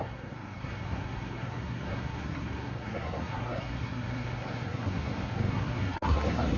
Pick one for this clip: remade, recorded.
remade